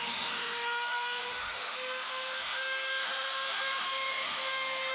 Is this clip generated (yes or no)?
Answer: yes